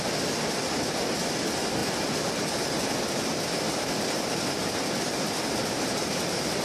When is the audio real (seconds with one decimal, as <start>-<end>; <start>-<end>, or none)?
0.0-6.6